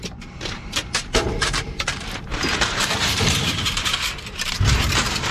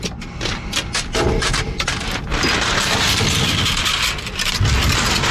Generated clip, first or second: first